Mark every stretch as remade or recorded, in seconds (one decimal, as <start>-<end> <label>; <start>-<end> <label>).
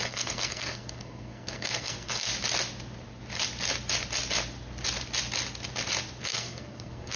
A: 0.0-2.3 remade; 2.3-6.2 recorded; 6.2-7.2 remade